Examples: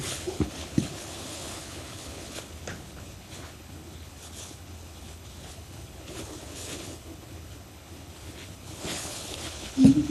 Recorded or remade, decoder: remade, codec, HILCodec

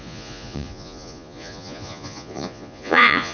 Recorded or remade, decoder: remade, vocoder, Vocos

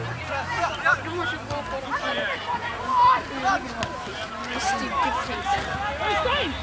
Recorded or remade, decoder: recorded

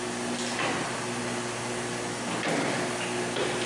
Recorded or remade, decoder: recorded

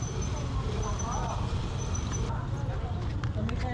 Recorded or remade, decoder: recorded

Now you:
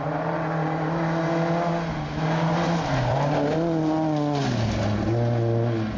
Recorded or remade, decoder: recorded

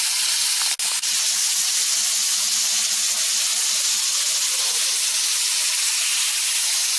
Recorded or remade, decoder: recorded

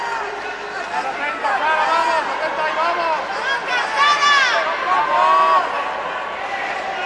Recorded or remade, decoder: recorded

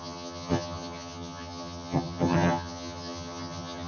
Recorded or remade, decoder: remade, vocoder, HiFi-GAN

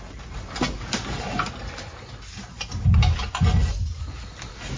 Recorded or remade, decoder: recorded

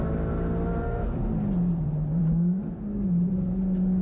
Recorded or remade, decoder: recorded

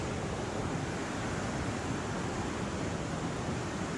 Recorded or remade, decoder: recorded